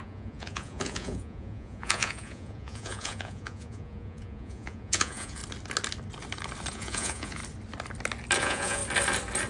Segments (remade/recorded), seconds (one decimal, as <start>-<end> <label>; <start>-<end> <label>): 0.0-5.4 remade; 5.4-6.7 recorded; 6.7-7.4 remade; 7.4-8.4 recorded; 8.4-8.8 remade; 8.8-9.5 recorded